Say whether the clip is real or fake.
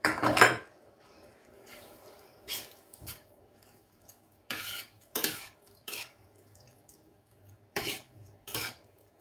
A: fake